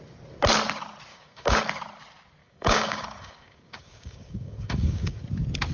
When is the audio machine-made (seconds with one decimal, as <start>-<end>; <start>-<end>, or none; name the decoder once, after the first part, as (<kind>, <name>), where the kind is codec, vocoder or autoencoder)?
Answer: 1.1-1.6 (codec, DAC); 2.4-5.2